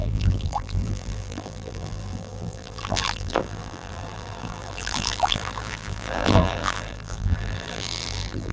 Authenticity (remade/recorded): remade